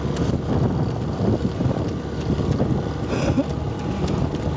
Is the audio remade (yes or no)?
no